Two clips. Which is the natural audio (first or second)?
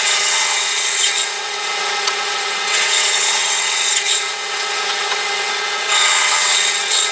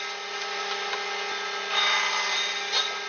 second